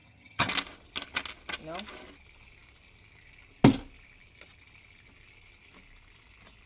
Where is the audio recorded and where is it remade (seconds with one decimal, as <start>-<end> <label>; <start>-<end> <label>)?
0.0-0.5 remade; 0.5-6.7 recorded